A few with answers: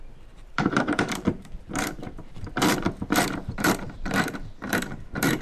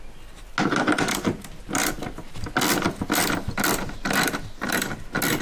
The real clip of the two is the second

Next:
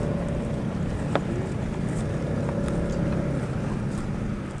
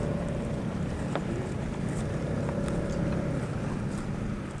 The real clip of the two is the first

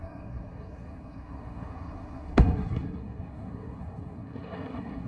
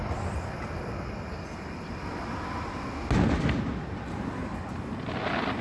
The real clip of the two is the second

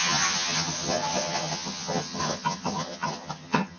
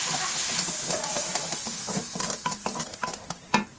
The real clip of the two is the second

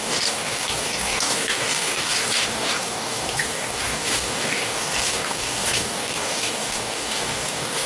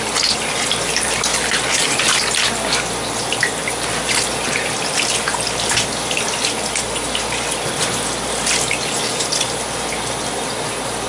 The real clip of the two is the second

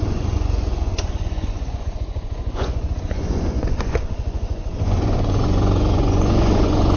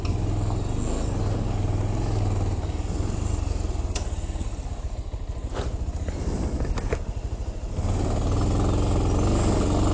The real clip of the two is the second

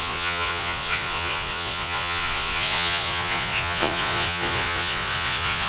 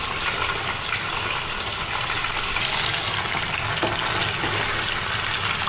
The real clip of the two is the second